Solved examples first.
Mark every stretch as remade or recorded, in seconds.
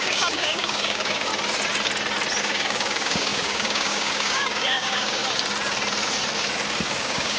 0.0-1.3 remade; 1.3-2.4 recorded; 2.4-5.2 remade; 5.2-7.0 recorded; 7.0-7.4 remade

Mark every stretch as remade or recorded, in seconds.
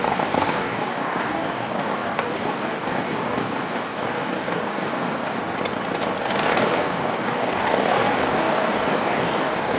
0.0-5.4 remade; 5.4-6.2 recorded; 6.2-9.8 remade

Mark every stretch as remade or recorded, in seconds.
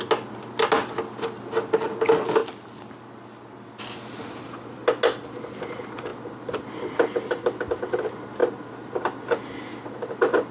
0.0-10.5 recorded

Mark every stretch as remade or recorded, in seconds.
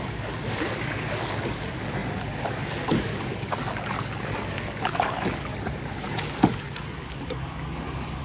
0.0-5.5 remade; 5.5-6.0 recorded; 6.0-8.2 remade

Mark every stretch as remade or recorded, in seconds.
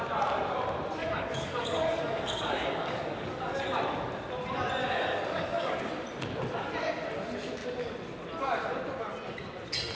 0.0-1.0 recorded; 1.0-3.6 remade; 3.6-4.8 recorded; 4.8-5.8 remade; 5.8-9.9 recorded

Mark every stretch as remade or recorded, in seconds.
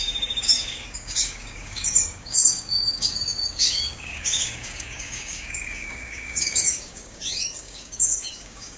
0.0-8.8 remade